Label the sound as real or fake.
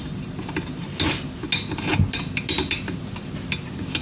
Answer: real